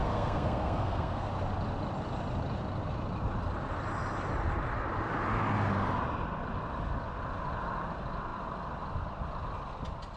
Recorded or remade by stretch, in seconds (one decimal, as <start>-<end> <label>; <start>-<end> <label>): 0.0-1.3 remade; 1.3-10.2 recorded